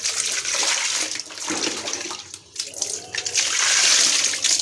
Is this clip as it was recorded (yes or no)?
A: yes